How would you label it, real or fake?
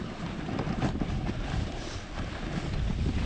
real